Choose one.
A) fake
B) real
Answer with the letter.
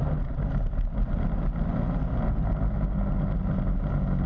B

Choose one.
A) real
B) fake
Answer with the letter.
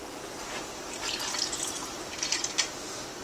A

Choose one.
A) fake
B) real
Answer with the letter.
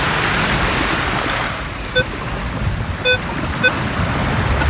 B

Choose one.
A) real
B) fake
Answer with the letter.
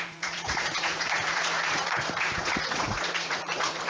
B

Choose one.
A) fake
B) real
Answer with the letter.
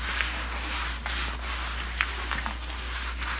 B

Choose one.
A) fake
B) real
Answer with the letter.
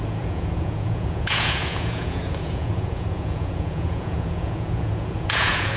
A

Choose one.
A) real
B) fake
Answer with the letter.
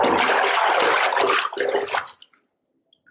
A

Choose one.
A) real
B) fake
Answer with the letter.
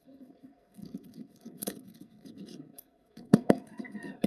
B